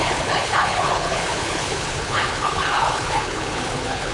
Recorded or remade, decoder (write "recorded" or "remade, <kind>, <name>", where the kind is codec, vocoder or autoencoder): remade, codec, HILCodec